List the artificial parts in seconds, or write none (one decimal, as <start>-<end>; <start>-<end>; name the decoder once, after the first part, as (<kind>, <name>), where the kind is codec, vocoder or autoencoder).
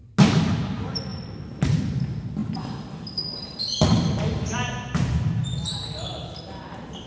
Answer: none